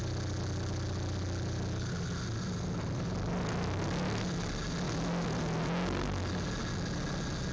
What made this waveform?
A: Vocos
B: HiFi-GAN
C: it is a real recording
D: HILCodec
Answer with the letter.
C